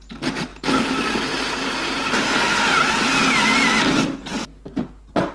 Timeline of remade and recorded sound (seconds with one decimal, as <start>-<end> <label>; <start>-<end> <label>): 0.0-5.3 recorded